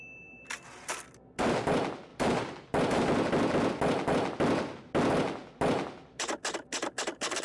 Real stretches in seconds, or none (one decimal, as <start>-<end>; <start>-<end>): 0.0-7.4